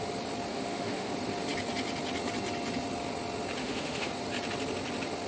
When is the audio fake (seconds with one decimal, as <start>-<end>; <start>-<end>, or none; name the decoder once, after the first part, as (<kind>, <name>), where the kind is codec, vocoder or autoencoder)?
0.5-1.1 (autoencoder, DAC-VAE); 3.6-4.1